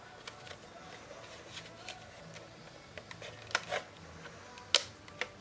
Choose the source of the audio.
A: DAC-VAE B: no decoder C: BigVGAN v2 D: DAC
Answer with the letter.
B